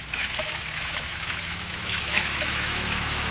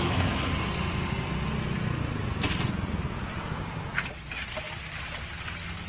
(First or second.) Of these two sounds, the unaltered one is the second